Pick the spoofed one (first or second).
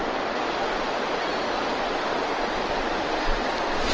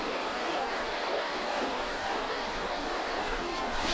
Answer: second